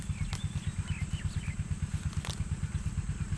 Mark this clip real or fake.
real